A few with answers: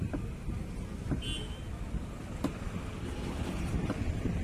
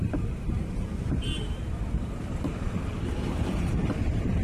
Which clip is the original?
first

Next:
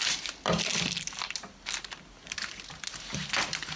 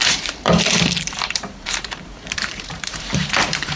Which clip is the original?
first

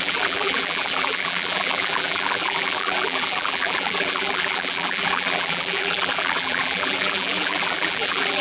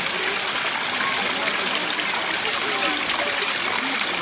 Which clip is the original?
second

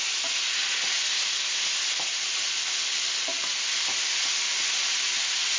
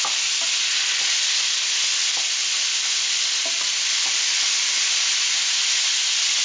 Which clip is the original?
first